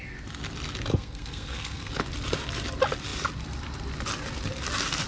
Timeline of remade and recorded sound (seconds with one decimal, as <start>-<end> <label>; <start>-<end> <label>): 0.0-0.9 recorded; 0.9-1.9 remade; 1.9-5.1 recorded